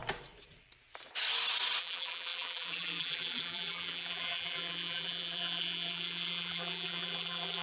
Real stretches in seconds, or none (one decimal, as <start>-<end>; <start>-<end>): 0.0-1.8